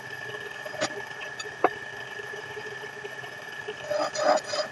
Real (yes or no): yes